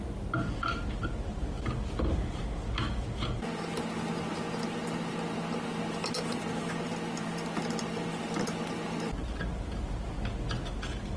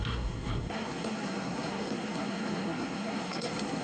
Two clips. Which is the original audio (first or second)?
first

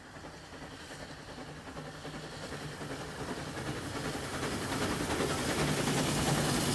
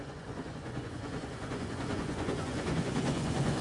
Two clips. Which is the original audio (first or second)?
first